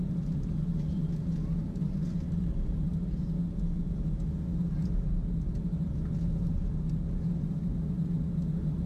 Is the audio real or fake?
real